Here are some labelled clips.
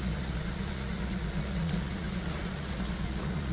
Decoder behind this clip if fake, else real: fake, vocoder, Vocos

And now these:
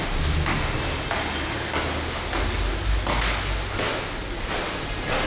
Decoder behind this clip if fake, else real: real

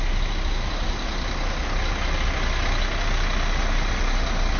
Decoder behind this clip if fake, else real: real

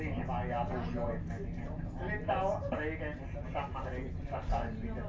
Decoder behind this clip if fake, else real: real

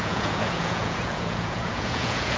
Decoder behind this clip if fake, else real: fake, vocoder, Vocos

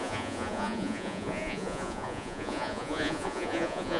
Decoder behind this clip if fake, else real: fake, vocoder, Vocos